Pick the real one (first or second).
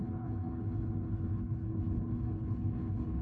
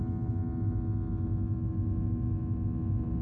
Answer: second